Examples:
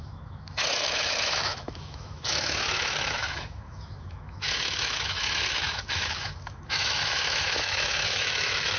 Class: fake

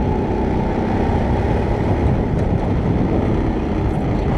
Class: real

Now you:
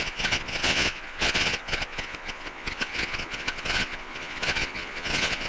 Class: fake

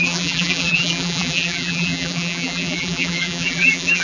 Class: fake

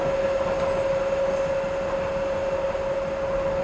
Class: real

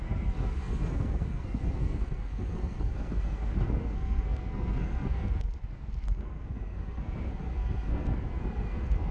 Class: fake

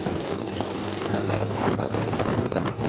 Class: fake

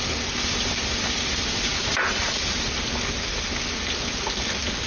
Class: real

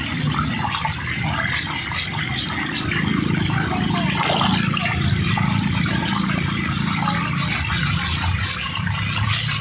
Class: real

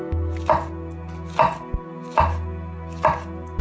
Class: real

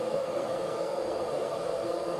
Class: fake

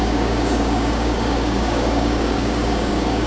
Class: fake